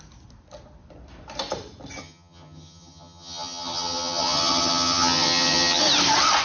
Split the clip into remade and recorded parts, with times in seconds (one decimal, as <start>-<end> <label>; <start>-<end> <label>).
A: 0.0-2.0 recorded; 2.0-5.8 remade; 5.8-6.4 recorded